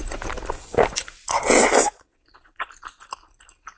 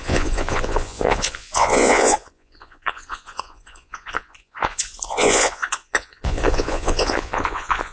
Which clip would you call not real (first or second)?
second